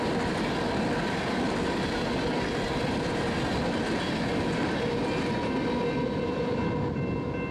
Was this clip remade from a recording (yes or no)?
no